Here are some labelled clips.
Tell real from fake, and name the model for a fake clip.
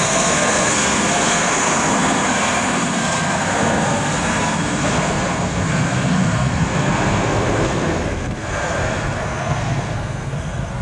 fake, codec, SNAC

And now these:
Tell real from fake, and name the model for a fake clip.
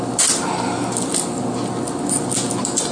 real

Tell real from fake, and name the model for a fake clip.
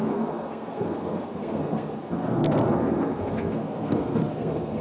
fake, codec, SNAC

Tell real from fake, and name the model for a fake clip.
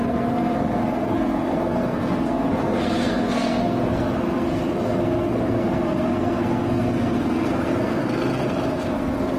fake, codec, SNAC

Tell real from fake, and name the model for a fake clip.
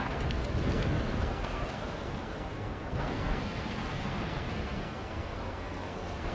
fake, codec, SNAC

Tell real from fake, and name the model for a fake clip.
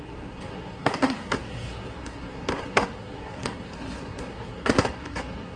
fake, codec, SNAC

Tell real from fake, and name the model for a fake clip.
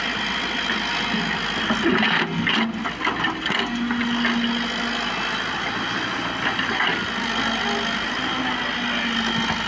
real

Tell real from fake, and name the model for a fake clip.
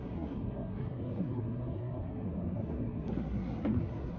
fake, codec, SNAC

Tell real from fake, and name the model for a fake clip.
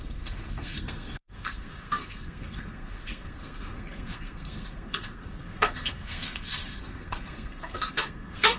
fake, codec, SNAC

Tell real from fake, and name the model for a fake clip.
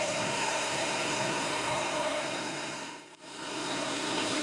fake, codec, SNAC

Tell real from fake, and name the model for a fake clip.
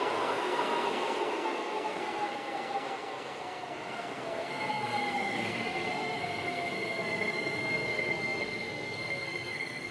fake, codec, SNAC